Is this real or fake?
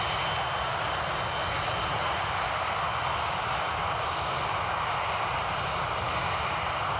real